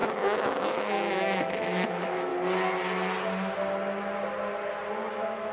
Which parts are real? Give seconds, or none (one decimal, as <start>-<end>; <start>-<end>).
2.3-5.1